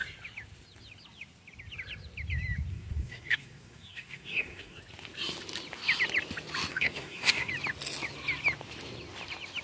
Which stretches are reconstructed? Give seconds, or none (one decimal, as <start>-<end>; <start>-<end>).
2.7-4.8; 6.7-7.5